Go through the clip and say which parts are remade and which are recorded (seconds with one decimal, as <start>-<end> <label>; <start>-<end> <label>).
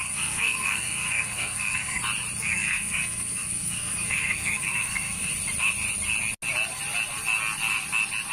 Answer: 0.0-2.0 remade; 2.0-2.4 recorded; 2.4-5.3 remade; 5.3-8.3 recorded